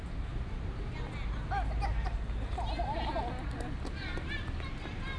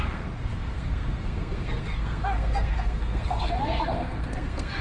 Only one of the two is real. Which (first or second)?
first